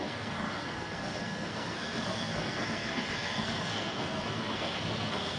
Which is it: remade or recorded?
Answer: remade